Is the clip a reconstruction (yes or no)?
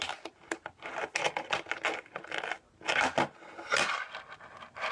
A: no